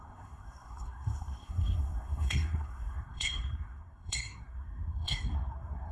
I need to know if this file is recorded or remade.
remade